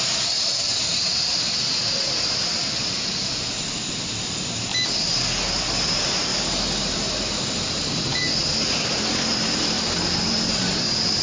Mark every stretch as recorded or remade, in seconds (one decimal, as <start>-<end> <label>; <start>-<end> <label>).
0.0-1.1 remade; 1.1-3.2 recorded; 3.2-4.7 remade; 4.7-5.7 recorded; 5.7-6.3 remade; 6.3-6.8 recorded; 6.8-11.2 remade